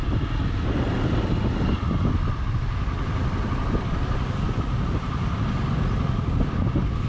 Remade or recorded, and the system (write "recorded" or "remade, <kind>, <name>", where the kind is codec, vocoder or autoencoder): recorded